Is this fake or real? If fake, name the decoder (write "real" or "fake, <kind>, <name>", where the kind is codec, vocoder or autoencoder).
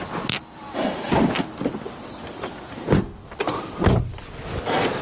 real